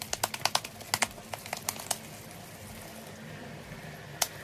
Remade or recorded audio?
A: recorded